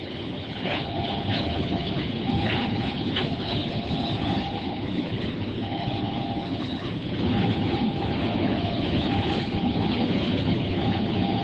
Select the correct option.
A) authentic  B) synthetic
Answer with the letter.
B